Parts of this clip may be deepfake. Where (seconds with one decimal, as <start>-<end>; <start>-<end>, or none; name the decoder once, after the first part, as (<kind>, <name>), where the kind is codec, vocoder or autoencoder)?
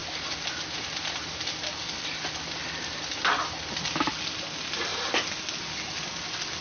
none